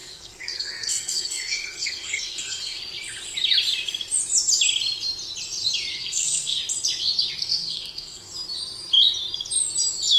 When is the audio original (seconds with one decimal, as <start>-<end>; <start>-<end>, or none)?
2.8-5.9; 6.6-7.4; 8.3-10.2